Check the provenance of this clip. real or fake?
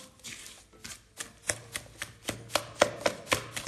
real